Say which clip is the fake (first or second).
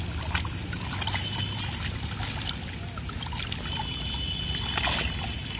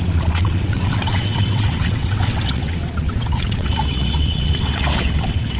second